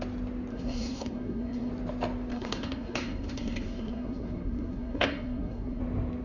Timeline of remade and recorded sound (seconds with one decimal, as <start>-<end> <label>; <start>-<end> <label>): 0.0-0.5 recorded; 0.5-1.7 remade; 1.7-2.3 recorded; 2.3-5.8 remade; 5.8-6.2 recorded